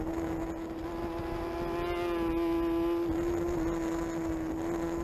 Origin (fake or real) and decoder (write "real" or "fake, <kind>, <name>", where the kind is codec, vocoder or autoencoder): real